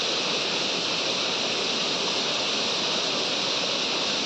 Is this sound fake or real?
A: real